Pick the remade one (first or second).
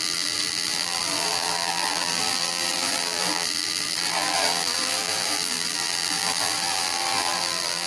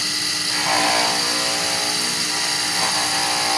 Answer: first